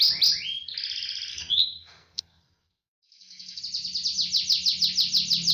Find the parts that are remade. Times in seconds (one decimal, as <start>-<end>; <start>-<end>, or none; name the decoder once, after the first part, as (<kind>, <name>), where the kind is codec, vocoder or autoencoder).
1.3-3.6 (codec, SNAC)